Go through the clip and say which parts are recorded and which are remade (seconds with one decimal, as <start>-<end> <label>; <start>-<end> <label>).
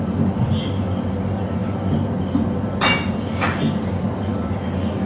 0.0-5.1 recorded